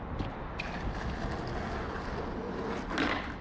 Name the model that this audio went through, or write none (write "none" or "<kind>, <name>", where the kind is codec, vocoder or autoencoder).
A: none